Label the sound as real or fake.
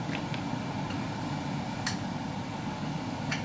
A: real